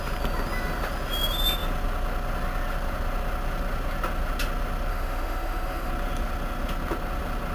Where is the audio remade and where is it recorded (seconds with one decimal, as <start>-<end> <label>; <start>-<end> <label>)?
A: 0.0-4.9 recorded; 4.9-5.9 remade; 5.9-7.5 recorded